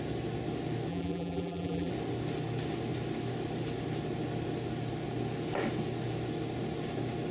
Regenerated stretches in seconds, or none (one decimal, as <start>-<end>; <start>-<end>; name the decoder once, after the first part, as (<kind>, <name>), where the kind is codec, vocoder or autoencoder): 0.9-1.9 (vocoder, BigVGAN v2)